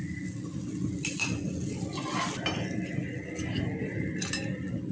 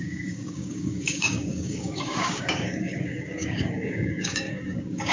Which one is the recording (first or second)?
first